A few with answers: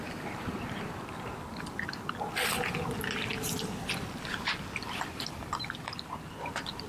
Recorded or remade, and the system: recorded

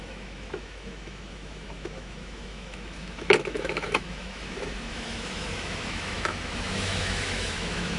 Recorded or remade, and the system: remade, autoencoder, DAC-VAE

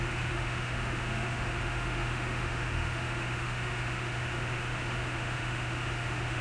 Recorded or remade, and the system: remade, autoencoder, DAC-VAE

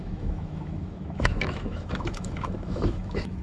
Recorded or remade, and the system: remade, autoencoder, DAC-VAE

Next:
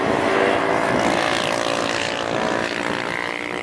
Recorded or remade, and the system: recorded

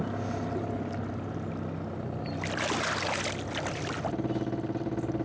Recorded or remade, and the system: recorded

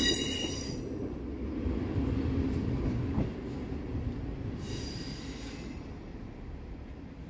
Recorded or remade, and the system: recorded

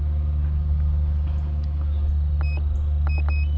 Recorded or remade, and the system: recorded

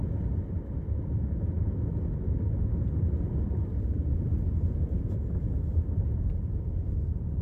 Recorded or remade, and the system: recorded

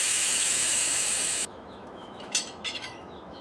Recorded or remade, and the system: remade, autoencoder, DAC-VAE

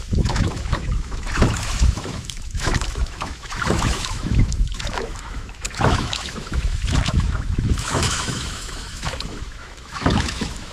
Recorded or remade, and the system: remade, autoencoder, DAC-VAE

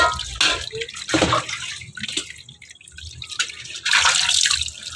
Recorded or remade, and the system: recorded